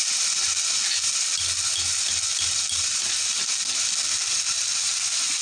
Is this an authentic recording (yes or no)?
yes